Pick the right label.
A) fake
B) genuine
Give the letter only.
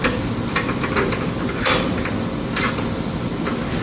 B